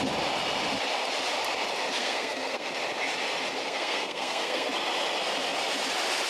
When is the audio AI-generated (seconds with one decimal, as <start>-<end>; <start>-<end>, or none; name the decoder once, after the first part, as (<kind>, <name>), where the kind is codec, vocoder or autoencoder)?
2.0-2.7 (codec, SNAC); 3.6-4.7